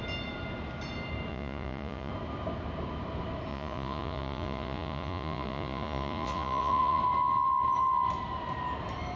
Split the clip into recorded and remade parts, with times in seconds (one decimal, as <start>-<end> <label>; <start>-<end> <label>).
0.0-1.3 recorded; 1.3-2.1 remade; 2.1-3.5 recorded; 3.5-7.0 remade; 7.0-9.2 recorded